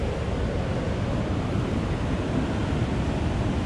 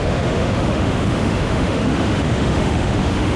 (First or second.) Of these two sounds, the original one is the first